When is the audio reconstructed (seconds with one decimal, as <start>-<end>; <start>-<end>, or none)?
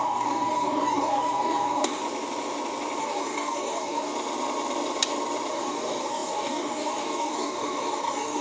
0.0-2.0; 3.0-4.1; 5.5-8.4